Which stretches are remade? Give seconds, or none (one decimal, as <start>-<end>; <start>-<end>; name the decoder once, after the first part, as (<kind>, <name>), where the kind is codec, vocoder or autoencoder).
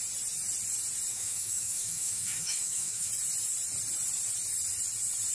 1.1-3.1 (autoencoder, DAC-VAE)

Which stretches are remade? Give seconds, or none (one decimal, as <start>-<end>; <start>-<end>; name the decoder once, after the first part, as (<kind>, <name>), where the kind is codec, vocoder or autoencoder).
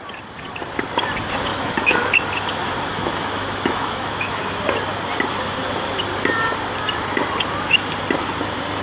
1.5-2.1 (autoencoder, DAC-VAE); 2.9-4.4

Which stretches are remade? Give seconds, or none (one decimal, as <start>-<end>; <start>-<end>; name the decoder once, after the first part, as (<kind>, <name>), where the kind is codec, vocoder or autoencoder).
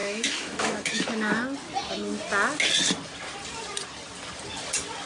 0.0-1.4 (autoencoder, DAC-VAE)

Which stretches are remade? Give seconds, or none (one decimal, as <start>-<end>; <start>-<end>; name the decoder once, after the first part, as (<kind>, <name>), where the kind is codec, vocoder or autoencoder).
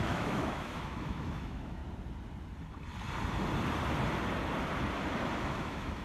0.0-1.8 (autoencoder, DAC-VAE); 5.4-6.0